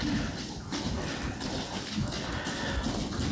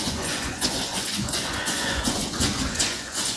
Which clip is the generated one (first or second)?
second